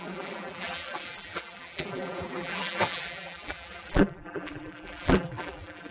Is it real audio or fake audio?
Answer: fake